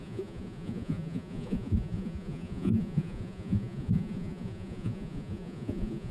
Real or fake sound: fake